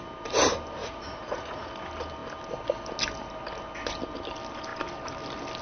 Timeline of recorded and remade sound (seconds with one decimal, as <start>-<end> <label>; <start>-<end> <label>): 0.0-0.8 recorded; 0.8-1.7 remade; 1.7-5.6 recorded